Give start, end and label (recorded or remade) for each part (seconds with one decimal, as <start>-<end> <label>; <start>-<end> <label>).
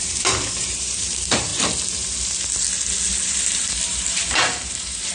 0.0-1.5 remade; 1.5-3.2 recorded; 3.2-5.1 remade